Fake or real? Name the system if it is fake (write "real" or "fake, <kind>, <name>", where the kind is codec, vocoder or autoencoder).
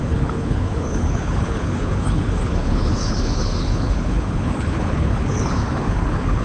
fake, codec, HILCodec